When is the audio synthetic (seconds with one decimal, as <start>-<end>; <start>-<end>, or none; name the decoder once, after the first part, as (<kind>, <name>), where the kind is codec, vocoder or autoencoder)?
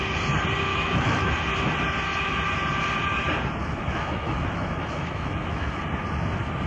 0.7-1.3 (autoencoder, DAC-VAE); 3.6-5.8